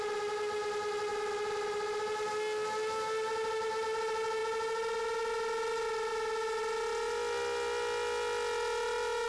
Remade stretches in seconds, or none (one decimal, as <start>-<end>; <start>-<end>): none